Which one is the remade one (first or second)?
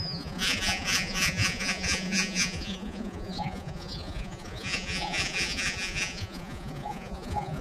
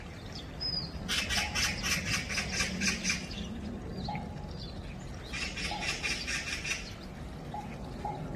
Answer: first